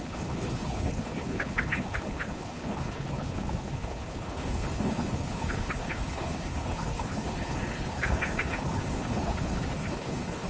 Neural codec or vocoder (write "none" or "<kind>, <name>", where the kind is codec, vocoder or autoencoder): codec, HILCodec